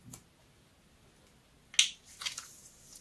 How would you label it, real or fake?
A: real